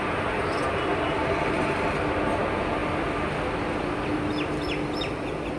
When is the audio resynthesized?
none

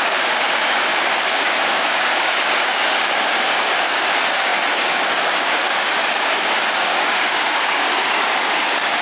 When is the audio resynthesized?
0.0-9.0 (codec, DAC)

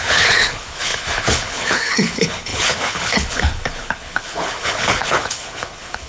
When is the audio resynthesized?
0.0-6.1 (codec, HILCodec)

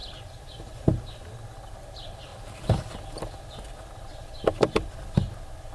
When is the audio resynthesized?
0.0-1.3 (vocoder, BigVGAN v2); 2.3-3.4; 4.1-4.9

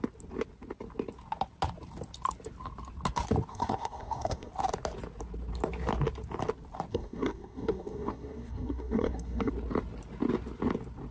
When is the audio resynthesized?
3.5-4.5 (codec, SNAC); 6.9-9.5

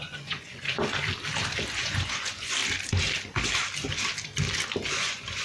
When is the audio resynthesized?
0.0-0.8 (vocoder, Vocos); 1.8-2.6; 4.9-5.4

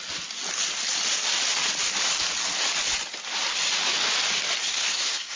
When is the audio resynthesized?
4.6-5.4 (codec, SNAC)

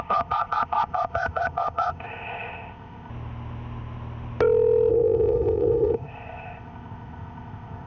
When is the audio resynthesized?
0.0-3.1 (codec, ZipCodec); 4.9-7.9